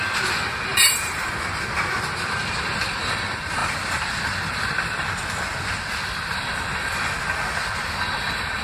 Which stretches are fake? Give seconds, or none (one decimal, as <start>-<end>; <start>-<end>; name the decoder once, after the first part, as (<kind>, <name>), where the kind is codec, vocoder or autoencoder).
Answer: 0.7-1.3 (vocoder, BigVGAN v2); 3.6-4.1